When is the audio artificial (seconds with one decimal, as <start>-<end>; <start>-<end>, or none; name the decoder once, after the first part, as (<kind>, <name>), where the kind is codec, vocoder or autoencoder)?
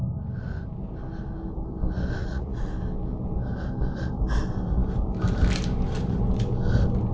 2.2-2.7 (vocoder, Vocos)